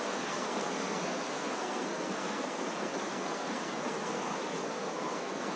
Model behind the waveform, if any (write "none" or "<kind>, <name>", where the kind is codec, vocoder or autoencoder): codec, SNAC